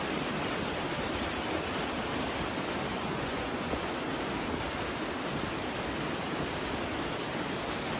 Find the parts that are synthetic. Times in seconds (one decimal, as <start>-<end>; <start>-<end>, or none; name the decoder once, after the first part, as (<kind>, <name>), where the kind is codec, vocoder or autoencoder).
2.9-4.1 (vocoder, Vocos)